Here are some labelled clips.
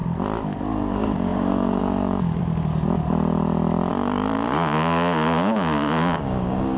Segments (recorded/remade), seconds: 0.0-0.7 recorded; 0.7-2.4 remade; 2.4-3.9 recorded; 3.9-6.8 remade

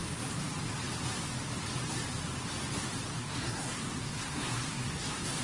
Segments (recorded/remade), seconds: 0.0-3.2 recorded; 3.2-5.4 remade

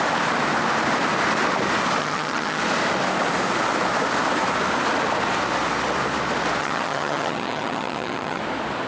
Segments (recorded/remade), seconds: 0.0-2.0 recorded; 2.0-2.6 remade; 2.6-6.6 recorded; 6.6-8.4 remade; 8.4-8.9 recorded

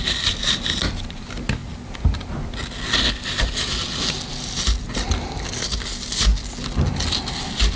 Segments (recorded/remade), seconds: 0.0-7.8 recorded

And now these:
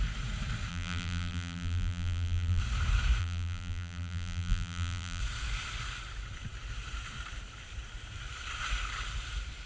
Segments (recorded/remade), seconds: 0.0-0.7 recorded; 0.7-2.6 remade; 2.6-3.2 recorded; 3.2-5.2 remade; 5.2-9.7 recorded

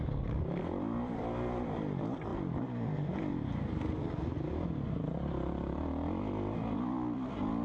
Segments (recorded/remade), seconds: 0.0-7.6 recorded

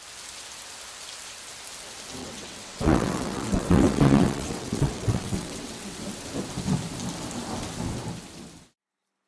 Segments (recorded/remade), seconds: 0.0-2.2 recorded; 2.2-6.0 remade; 6.0-9.3 recorded

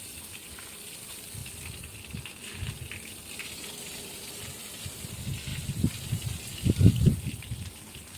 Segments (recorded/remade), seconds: 0.0-8.2 recorded